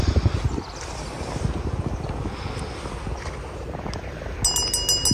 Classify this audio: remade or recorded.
recorded